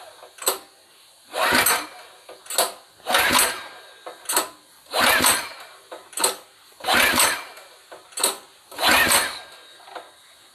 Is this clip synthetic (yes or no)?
no